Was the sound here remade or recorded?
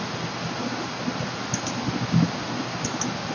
recorded